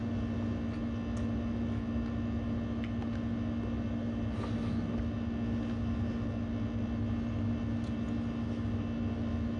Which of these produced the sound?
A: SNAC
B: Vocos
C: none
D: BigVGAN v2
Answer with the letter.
C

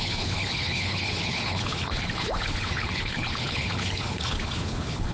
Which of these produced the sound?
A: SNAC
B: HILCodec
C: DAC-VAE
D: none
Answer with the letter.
B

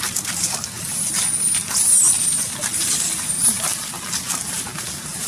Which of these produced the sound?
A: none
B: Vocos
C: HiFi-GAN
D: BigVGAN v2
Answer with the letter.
A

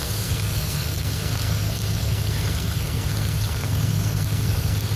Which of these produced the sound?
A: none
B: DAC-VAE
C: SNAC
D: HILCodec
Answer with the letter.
C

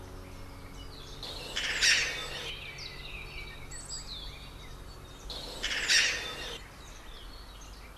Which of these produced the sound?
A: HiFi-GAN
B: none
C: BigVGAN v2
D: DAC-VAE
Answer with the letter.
B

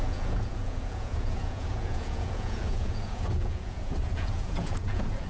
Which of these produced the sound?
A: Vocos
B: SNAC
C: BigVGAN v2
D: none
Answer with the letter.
A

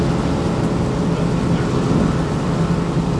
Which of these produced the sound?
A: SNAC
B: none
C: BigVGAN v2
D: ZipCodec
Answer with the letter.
B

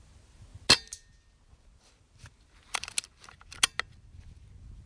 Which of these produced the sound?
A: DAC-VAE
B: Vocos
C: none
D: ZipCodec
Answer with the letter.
C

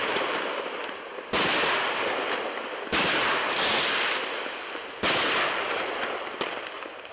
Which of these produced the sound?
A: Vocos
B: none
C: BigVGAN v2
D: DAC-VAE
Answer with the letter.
B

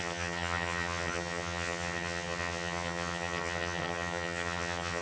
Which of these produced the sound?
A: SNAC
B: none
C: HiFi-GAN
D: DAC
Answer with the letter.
C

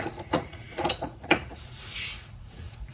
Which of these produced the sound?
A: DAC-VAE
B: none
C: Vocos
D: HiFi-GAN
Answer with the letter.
C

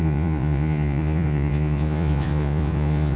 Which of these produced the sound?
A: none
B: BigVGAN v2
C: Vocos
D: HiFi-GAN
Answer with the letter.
C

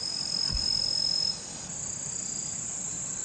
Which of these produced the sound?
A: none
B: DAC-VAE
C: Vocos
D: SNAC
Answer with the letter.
A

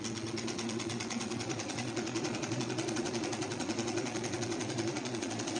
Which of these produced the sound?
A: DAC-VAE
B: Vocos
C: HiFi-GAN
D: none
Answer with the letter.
B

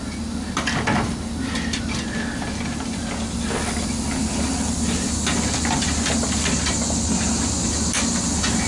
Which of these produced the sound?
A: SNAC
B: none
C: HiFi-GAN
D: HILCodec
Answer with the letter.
B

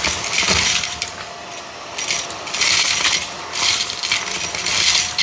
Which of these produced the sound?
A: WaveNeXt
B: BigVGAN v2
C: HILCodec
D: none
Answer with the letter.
D